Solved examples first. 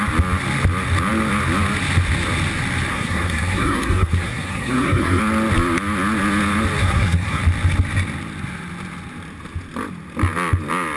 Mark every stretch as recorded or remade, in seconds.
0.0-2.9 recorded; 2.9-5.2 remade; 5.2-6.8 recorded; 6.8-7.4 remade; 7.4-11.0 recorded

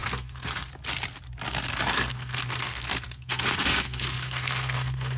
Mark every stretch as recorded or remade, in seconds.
0.0-0.7 remade; 0.7-1.9 recorded; 1.9-5.2 remade

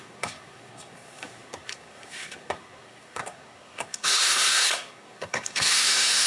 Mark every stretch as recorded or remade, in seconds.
0.0-6.3 remade

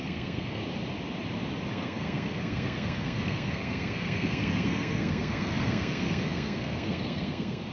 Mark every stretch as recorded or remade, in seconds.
0.0-0.6 remade; 0.6-1.7 recorded; 1.7-7.7 remade

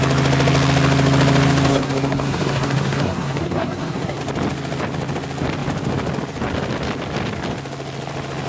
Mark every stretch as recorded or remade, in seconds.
0.0-1.7 recorded; 1.7-4.2 remade; 4.2-8.5 recorded

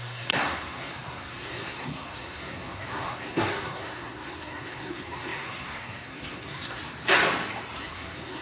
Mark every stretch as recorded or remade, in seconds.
0.0-6.8 remade; 6.8-7.8 recorded; 7.8-8.4 remade

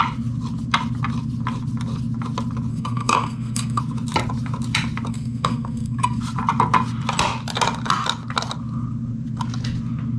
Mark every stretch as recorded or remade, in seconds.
0.0-2.7 recorded; 2.7-3.8 remade; 3.8-5.1 recorded; 5.1-6.2 remade; 6.2-10.2 recorded

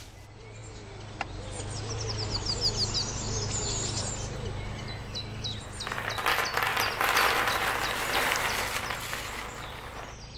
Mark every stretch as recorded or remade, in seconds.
0.0-10.4 recorded